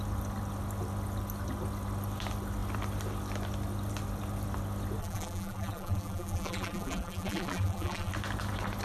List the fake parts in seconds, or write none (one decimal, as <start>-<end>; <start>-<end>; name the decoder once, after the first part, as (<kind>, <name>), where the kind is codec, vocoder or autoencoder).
5.0-8.1 (vocoder, BigVGAN v2)